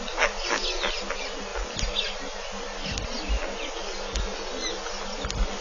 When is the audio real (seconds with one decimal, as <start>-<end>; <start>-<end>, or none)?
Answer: 0.0-5.6